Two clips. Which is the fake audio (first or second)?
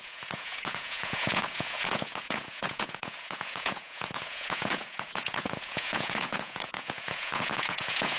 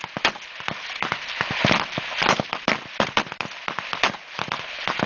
first